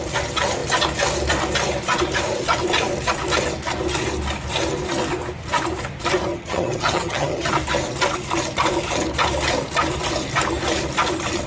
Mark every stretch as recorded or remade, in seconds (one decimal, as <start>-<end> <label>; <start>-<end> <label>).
0.0-6.3 recorded; 6.3-7.5 remade; 7.5-11.5 recorded